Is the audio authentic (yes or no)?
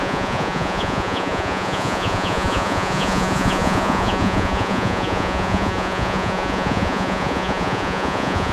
no